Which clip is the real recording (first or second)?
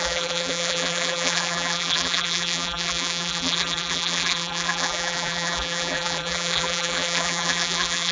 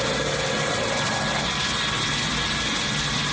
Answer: second